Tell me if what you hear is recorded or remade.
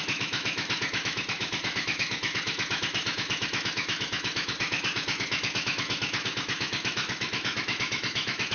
remade